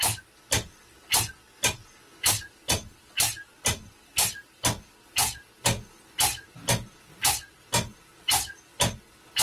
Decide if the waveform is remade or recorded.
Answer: recorded